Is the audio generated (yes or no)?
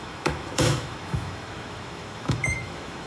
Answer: yes